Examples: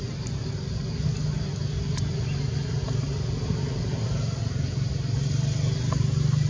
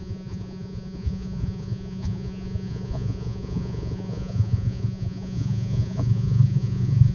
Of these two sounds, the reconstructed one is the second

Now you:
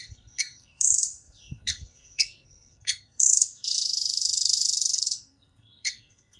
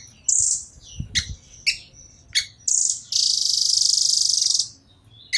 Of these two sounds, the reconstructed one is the first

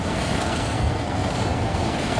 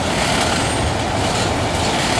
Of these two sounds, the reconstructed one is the first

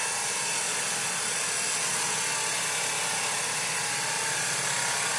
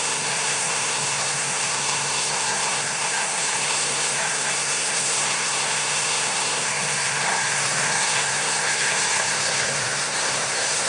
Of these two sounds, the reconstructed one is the second